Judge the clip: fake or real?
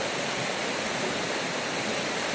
real